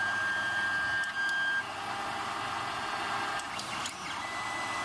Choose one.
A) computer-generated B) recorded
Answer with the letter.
B